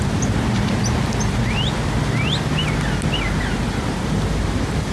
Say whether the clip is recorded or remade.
recorded